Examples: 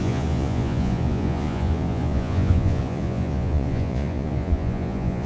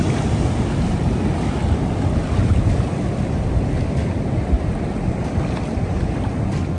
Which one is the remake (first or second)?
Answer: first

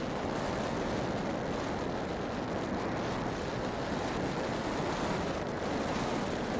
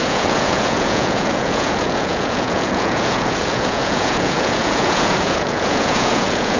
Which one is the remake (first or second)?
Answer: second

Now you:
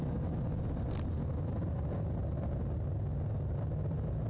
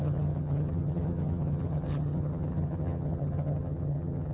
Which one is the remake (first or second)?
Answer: second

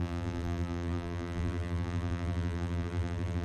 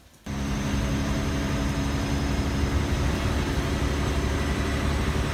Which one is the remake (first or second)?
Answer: first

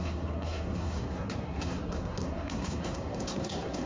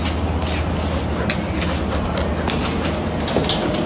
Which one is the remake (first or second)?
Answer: first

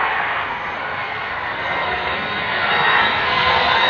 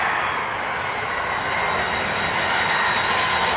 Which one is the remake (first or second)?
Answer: first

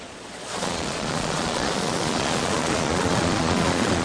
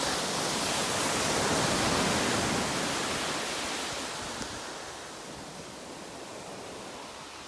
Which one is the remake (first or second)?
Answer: first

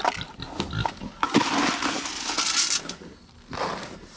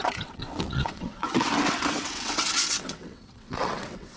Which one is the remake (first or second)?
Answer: second